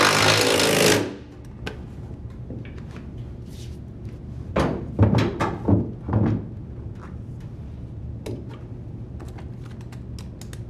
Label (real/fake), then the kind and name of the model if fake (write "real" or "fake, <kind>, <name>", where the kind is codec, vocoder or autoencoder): real